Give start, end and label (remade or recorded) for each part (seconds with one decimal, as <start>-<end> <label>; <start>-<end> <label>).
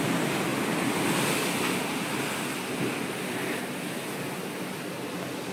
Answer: 0.0-5.5 recorded